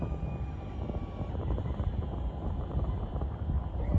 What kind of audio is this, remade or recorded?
remade